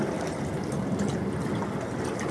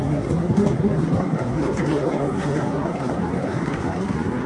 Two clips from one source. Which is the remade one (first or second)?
second